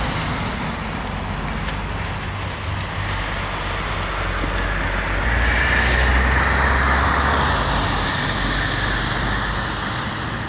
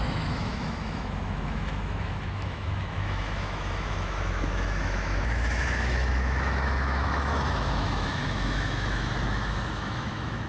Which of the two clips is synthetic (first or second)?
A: second